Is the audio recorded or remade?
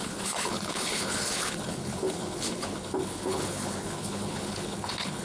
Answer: remade